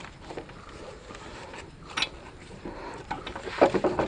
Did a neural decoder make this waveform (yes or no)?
no